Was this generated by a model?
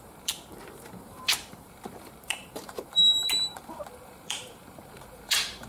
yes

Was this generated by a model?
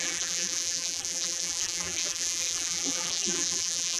yes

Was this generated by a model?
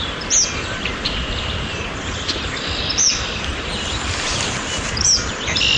yes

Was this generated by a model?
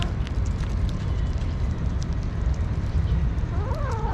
yes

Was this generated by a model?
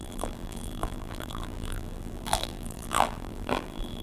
yes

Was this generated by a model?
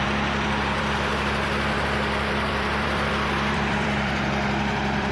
yes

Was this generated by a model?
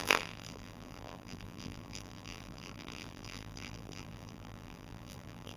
yes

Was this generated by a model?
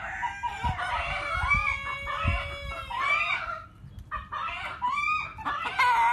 no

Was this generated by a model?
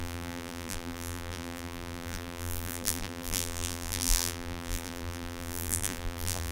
yes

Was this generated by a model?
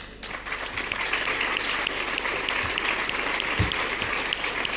no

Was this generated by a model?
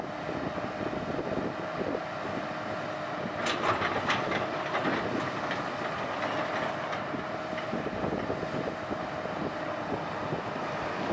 no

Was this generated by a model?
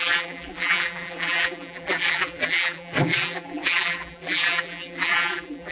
yes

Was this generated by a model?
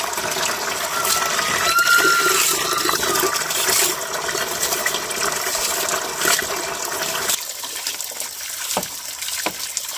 no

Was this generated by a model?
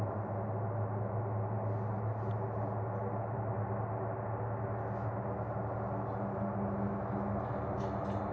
no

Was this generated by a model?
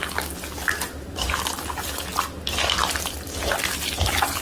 no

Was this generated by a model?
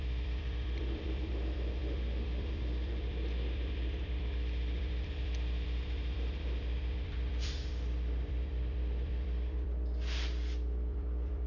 yes